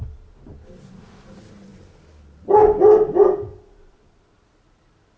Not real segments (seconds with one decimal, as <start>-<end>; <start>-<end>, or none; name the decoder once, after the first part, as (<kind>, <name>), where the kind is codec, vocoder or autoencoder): none